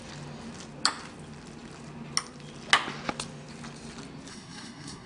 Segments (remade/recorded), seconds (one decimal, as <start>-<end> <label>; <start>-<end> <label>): 0.0-4.3 recorded; 4.3-5.1 remade

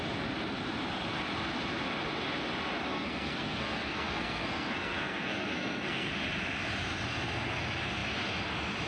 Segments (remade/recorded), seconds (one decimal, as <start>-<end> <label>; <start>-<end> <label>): 0.0-2.9 recorded; 2.9-6.1 remade; 6.1-8.9 recorded

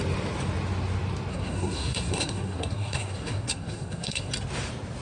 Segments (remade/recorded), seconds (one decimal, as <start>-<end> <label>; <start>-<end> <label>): 0.0-1.3 recorded; 1.3-4.3 remade; 4.3-5.0 recorded

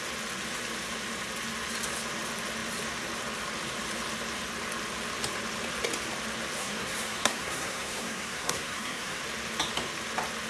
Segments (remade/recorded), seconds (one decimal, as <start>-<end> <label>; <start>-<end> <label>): 0.0-6.6 recorded; 6.6-9.2 remade; 9.2-10.5 recorded

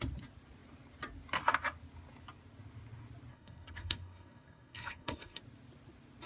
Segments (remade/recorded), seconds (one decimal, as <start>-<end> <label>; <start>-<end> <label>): 0.0-3.3 recorded; 3.3-5.4 remade; 5.4-6.3 recorded

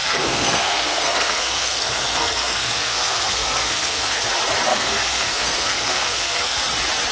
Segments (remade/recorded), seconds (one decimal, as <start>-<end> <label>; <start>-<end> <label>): 0.0-4.2 remade; 4.2-4.7 recorded; 4.7-6.6 remade; 6.6-7.1 recorded